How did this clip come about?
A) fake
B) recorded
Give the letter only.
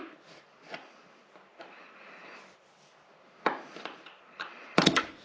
B